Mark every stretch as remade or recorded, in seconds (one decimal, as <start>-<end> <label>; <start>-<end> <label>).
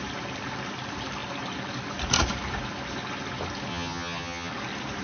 0.0-3.7 recorded; 3.7-4.5 remade; 4.5-5.0 recorded